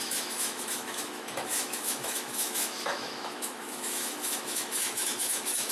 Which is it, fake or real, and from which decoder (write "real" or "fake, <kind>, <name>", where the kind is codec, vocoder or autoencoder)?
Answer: fake, autoencoder, DAC-VAE